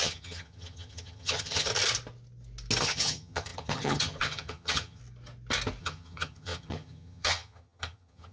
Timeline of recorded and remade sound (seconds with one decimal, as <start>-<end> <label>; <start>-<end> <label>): 0.0-1.7 remade; 1.7-2.8 recorded; 2.8-5.0 remade; 5.0-5.8 recorded; 5.8-8.3 remade